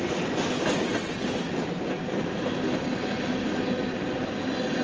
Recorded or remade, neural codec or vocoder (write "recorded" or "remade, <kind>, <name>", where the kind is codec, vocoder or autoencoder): recorded